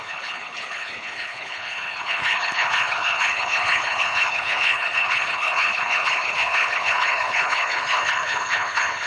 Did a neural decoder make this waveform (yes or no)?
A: yes